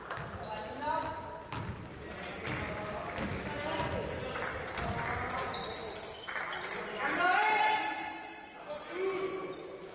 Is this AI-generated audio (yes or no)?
no